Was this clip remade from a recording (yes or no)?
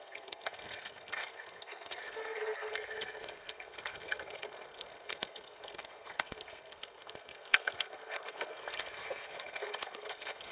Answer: yes